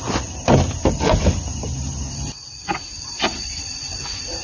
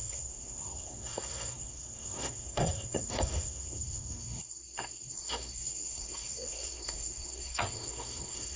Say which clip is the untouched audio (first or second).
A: first